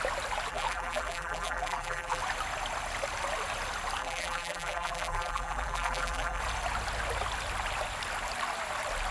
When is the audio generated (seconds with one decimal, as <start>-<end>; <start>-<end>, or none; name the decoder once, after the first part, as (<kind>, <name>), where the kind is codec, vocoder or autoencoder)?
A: 0.5-2.2 (vocoder, BigVGAN v2); 4.0-6.4